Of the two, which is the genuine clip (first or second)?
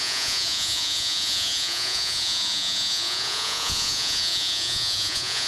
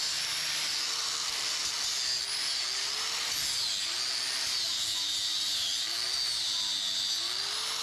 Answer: second